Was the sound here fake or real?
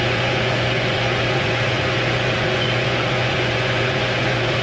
fake